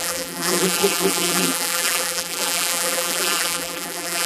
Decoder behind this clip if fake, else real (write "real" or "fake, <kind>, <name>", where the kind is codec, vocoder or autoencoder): fake, vocoder, BigVGAN v2